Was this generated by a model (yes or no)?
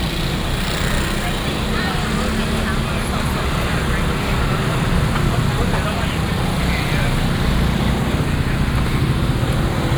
no